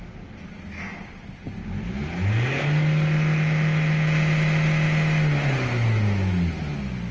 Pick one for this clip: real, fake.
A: real